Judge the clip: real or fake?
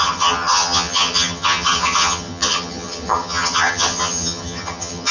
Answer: fake